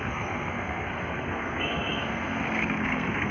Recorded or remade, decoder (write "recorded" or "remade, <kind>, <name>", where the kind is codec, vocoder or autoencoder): remade, codec, SNAC